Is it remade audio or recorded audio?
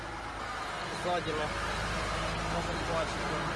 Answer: recorded